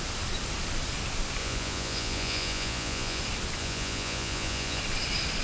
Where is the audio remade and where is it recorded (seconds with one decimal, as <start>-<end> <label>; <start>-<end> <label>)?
0.0-1.4 recorded; 1.4-3.2 remade; 3.2-3.6 recorded; 3.6-4.8 remade; 4.8-5.4 recorded